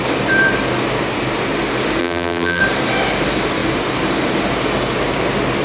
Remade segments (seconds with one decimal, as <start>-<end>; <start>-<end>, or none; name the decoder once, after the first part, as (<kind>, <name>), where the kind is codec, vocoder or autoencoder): 2.0-2.6 (vocoder, BigVGAN v2)